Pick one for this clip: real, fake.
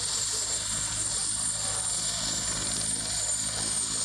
real